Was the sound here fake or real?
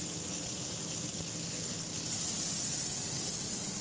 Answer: real